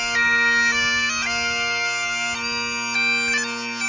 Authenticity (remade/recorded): recorded